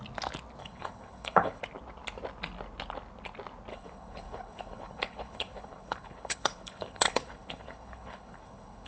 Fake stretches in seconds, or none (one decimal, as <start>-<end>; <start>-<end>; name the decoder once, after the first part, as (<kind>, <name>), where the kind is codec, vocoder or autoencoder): 0.6-1.6 (codec, HILCodec); 3.7-8.9